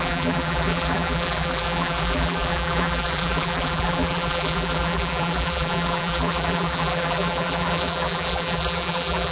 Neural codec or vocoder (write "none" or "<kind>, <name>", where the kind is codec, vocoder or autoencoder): vocoder, BigVGAN v2